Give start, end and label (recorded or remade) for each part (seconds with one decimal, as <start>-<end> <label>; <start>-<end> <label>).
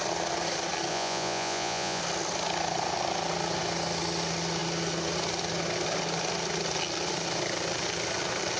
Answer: 0.0-0.9 recorded; 0.9-2.0 remade; 2.0-8.6 recorded